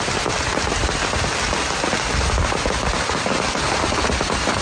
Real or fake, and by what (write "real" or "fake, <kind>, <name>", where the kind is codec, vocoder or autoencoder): real